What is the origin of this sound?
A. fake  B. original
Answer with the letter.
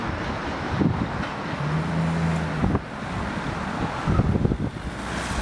B